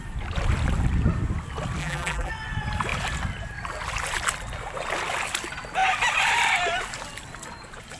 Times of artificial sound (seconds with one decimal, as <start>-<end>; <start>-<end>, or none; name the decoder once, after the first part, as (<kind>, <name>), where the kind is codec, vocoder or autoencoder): 1.8-2.3 (vocoder, BigVGAN v2)